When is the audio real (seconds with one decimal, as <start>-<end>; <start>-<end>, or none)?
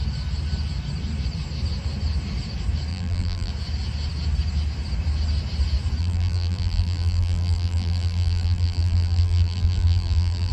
0.0-2.9; 3.5-6.0